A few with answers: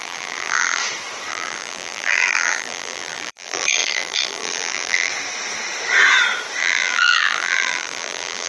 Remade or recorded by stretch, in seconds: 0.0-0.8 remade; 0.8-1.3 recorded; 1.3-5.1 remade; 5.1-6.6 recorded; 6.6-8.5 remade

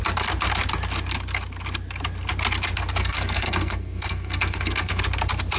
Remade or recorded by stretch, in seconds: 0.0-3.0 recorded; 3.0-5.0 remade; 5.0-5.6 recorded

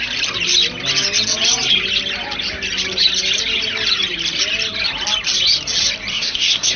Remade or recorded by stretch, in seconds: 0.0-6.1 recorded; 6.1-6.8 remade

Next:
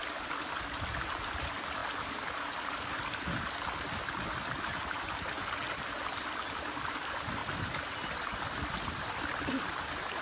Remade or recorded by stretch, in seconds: 0.0-10.2 recorded

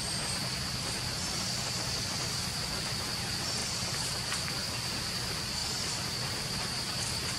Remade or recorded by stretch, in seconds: 0.0-3.6 recorded; 3.6-5.1 remade; 5.1-7.4 recorded

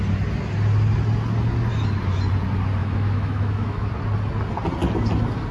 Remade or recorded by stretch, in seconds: 0.0-2.8 recorded; 2.8-3.9 remade; 3.9-5.5 recorded